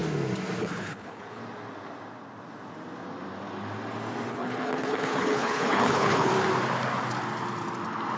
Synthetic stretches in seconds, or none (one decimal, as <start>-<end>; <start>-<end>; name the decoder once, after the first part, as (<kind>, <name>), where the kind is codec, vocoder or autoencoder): 0.6-1.4 (codec, HILCodec); 4.3-6.3